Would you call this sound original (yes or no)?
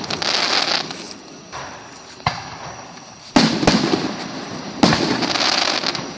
yes